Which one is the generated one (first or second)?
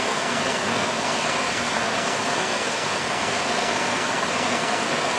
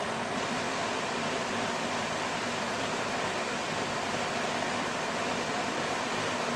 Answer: first